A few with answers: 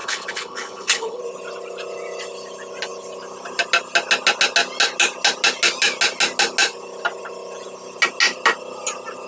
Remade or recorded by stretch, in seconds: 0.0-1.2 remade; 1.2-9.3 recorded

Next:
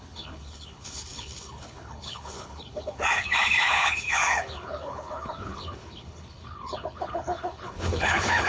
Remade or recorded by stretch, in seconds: 0.0-8.5 remade